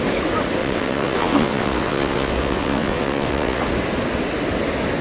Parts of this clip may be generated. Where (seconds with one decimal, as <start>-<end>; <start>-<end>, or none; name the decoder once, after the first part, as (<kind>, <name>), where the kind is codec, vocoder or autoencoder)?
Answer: 0.6-3.6 (vocoder, WaveNeXt)